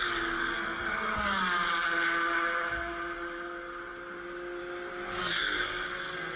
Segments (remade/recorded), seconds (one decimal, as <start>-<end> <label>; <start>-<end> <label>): 0.0-0.4 recorded; 0.4-1.2 remade; 1.2-5.2 recorded; 5.2-6.4 remade